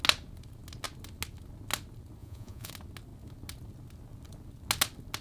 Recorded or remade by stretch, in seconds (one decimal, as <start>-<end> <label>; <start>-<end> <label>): 0.0-2.2 recorded; 2.2-2.7 remade; 2.7-5.2 recorded